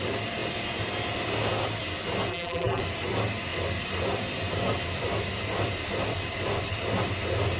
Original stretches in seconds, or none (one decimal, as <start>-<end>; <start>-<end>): 0.0-2.3; 2.8-7.6